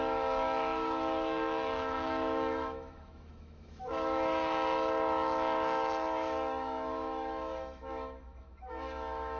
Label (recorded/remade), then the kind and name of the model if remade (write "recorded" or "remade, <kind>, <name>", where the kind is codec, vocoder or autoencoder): remade, autoencoder, DAC-VAE